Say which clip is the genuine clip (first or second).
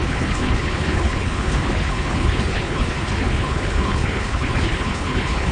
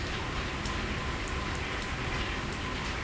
second